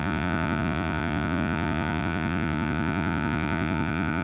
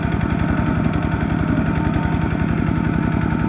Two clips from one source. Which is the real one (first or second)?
second